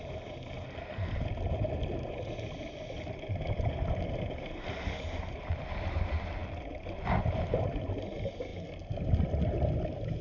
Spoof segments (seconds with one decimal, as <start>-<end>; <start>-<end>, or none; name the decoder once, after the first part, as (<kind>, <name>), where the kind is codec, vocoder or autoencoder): none